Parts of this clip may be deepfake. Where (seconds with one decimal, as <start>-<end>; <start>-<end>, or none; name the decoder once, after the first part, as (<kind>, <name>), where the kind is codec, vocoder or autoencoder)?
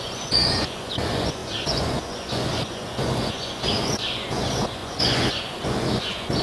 0.0-6.4 (vocoder, Vocos)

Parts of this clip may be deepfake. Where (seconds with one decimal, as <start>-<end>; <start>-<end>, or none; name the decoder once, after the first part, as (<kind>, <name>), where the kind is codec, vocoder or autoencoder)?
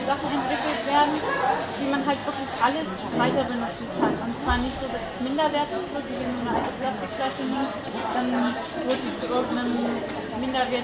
none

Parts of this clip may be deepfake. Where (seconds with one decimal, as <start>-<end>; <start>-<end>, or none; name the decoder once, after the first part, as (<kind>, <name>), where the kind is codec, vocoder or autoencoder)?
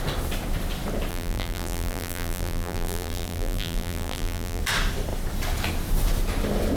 1.1-4.6 (vocoder, BigVGAN v2)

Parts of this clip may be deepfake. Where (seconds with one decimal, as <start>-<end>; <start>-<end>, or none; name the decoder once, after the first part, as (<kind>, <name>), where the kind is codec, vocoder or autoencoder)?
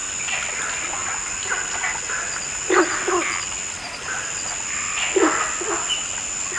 none